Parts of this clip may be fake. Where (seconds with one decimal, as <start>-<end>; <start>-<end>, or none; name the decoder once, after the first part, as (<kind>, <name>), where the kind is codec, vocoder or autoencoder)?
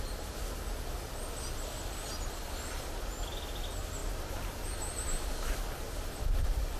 none